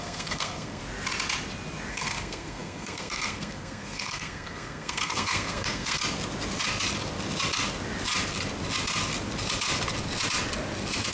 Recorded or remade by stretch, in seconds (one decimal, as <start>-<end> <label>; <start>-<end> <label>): 0.0-0.8 remade; 0.8-1.9 recorded; 1.9-6.0 remade; 6.0-11.1 recorded